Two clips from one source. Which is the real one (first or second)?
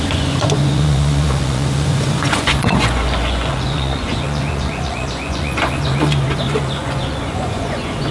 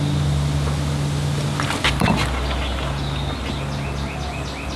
second